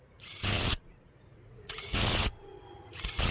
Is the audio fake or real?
fake